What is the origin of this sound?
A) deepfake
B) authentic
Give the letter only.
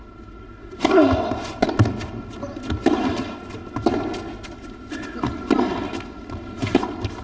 B